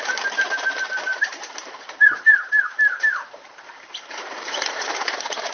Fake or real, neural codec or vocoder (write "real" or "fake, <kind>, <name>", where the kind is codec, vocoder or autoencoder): fake, vocoder, BigVGAN v2